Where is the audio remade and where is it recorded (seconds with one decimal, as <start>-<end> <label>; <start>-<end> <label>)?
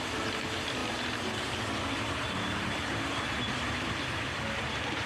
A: 0.0-5.1 recorded